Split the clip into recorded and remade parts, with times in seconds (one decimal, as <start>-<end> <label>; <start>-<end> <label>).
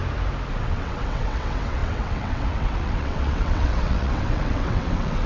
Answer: 0.0-0.5 recorded; 0.5-5.3 remade